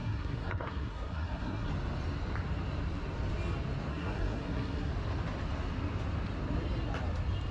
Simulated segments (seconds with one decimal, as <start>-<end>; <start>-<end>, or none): 0.0-1.7; 3.9-4.9